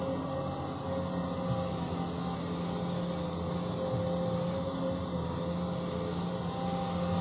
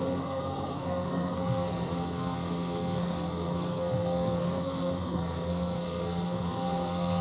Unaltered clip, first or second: first